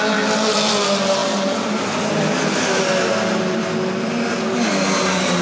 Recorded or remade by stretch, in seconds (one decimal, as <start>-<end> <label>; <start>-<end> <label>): 0.0-5.4 recorded